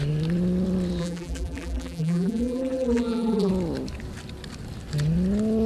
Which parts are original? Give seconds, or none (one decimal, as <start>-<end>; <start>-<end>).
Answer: 0.0-1.0; 3.5-5.7